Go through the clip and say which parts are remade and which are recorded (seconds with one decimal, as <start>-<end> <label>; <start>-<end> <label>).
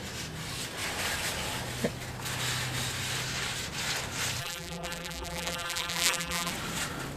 0.0-4.4 recorded; 4.4-6.5 remade; 6.5-7.2 recorded